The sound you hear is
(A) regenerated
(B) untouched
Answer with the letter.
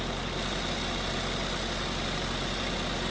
B